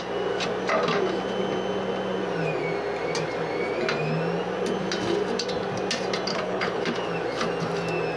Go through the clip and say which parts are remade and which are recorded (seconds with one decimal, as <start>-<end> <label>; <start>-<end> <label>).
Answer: 0.0-6.3 recorded; 6.3-6.8 remade; 6.8-8.2 recorded